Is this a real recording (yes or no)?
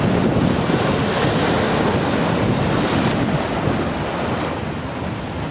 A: yes